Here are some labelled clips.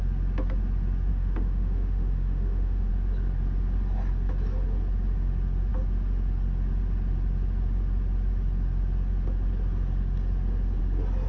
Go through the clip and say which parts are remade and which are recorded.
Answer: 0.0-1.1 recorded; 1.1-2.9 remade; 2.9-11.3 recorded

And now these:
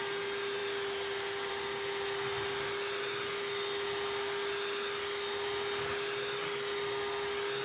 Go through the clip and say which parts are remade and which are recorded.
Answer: 0.0-7.6 recorded

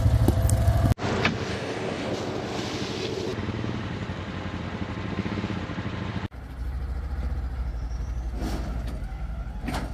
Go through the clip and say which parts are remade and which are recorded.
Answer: 0.0-1.5 recorded; 1.5-2.1 remade; 2.1-9.9 recorded

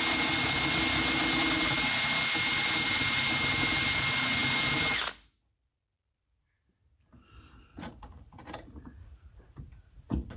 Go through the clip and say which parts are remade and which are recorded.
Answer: 0.0-7.7 recorded; 7.7-10.4 remade

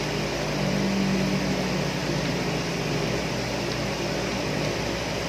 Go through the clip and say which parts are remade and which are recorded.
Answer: 0.0-5.3 recorded

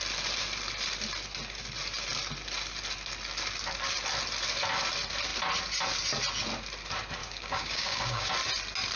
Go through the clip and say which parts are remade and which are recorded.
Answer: 0.0-7.2 recorded; 7.2-8.3 remade; 8.3-9.0 recorded

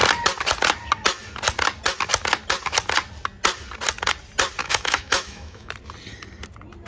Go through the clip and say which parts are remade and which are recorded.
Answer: 0.0-4.6 recorded; 4.6-5.7 remade; 5.7-6.9 recorded